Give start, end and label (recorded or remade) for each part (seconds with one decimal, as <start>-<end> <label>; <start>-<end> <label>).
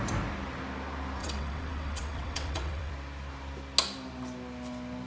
0.0-1.2 recorded; 1.2-2.9 remade; 2.9-5.1 recorded